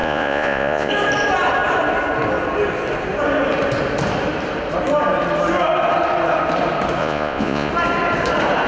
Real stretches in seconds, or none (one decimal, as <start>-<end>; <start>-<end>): 0.9-7.0; 7.7-8.7

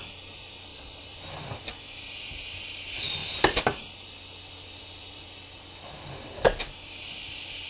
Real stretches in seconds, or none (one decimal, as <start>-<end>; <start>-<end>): 0.0-0.7; 1.2-7.7

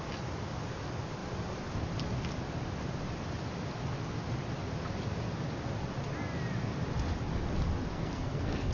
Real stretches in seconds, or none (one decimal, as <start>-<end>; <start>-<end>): 0.0-7.9